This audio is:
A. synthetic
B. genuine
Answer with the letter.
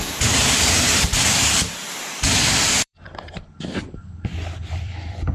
A